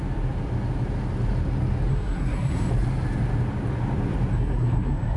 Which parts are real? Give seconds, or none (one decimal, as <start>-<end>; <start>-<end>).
0.0-1.9; 2.7-4.3